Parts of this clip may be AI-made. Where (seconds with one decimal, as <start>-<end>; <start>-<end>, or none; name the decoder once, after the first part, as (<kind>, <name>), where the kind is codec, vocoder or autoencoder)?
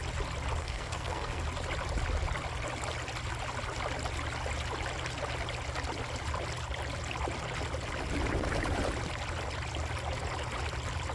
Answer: 0.6-1.4 (codec, SNAC)